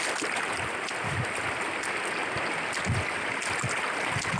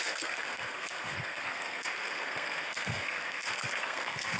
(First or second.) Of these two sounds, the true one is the first